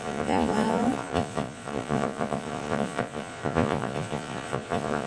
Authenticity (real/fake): fake